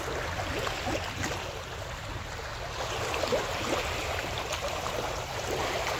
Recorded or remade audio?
recorded